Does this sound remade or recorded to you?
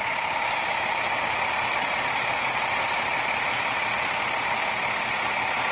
recorded